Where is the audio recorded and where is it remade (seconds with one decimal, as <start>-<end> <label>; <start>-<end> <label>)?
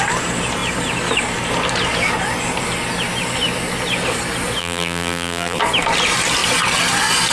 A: 0.0-4.6 recorded; 4.6-5.6 remade; 5.6-7.3 recorded